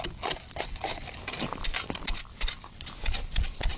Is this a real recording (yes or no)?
no